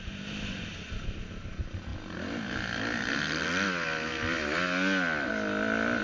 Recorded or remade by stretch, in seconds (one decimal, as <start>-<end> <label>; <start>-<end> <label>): 0.0-6.0 recorded